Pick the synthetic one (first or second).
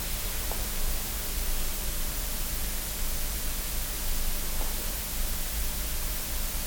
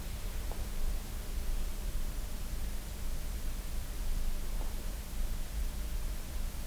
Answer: second